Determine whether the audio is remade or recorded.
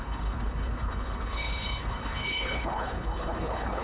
remade